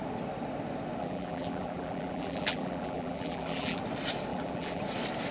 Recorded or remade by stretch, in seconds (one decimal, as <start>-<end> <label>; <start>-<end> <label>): 0.0-1.0 recorded; 1.0-3.8 remade; 3.8-4.3 recorded; 4.3-4.8 remade; 4.8-5.3 recorded